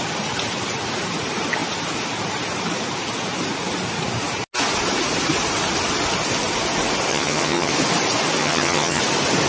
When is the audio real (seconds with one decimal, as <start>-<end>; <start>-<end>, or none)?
0.0-7.1; 7.7-8.4; 9.0-9.5